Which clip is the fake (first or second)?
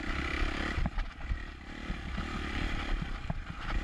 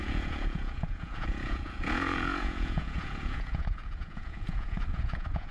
second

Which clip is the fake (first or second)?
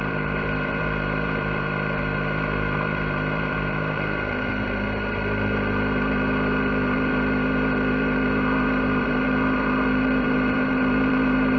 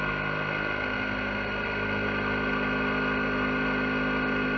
first